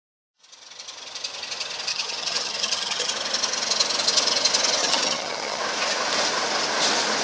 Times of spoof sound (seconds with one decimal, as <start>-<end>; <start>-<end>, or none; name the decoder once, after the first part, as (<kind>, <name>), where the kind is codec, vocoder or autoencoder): 1.9-3.1 (vocoder, HiFi-GAN); 4.8-5.6